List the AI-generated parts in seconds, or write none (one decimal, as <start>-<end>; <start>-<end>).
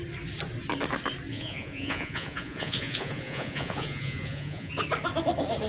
1.3-4.7